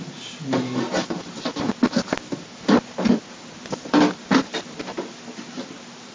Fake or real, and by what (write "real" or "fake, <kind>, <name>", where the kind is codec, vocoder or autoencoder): real